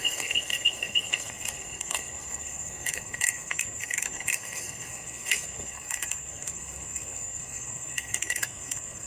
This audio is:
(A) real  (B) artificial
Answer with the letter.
B